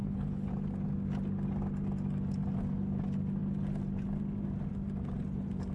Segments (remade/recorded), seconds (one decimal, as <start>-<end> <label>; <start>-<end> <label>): 0.0-0.5 remade; 0.5-5.7 recorded